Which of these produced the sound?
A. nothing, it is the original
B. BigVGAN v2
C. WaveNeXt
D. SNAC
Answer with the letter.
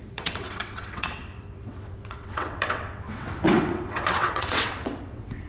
C